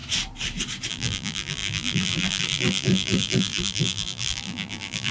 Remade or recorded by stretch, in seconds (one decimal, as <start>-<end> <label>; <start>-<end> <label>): 0.0-0.9 recorded; 0.9-5.1 remade